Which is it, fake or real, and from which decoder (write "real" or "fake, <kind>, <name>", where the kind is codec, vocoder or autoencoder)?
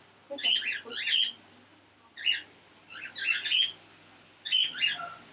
real